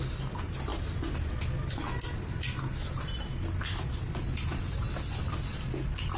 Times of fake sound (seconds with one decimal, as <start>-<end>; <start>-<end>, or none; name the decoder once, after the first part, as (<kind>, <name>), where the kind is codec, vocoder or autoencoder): none